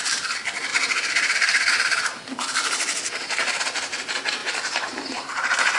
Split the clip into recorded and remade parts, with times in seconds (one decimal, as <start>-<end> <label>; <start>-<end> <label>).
0.0-0.7 recorded; 0.7-3.6 remade; 3.6-4.4 recorded; 4.4-5.8 remade